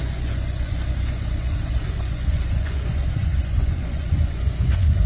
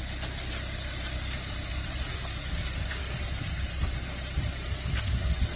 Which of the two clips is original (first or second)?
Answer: second